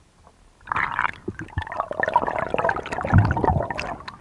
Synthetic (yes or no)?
no